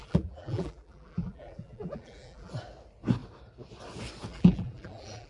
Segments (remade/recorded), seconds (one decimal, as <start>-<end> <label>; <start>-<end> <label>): 0.0-2.5 remade; 2.5-4.3 recorded; 4.3-5.3 remade